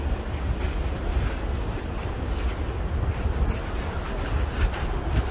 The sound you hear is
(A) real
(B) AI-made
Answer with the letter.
A